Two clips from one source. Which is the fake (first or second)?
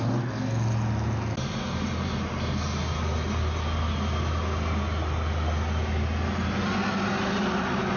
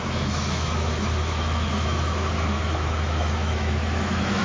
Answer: second